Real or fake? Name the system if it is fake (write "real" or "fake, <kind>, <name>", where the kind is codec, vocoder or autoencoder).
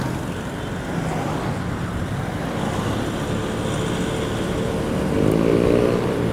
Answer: real